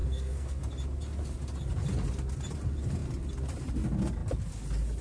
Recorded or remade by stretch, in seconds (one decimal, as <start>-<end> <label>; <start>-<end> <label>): 0.0-0.6 remade; 0.6-5.0 recorded